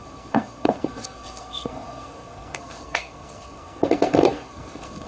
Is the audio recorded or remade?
remade